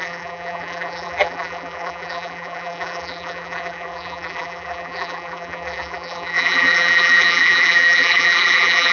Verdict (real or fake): fake